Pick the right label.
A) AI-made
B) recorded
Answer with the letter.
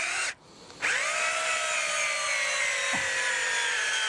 B